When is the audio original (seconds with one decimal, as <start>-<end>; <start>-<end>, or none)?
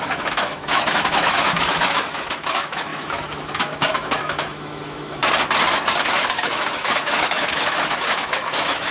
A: 5.2-6.0